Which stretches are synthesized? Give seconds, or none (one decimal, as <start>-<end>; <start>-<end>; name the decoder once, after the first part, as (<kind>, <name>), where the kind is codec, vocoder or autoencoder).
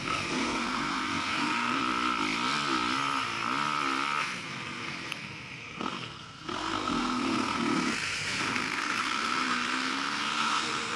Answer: 0.0-1.8 (codec, SNAC); 4.2-11.0